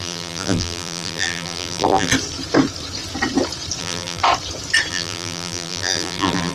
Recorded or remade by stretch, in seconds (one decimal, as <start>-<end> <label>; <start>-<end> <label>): 0.0-2.1 remade; 2.1-3.8 recorded; 3.8-4.2 remade; 4.2-4.9 recorded; 4.9-6.5 remade